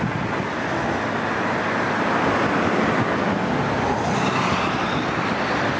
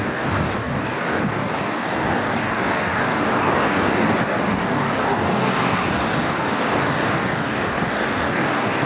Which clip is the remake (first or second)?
second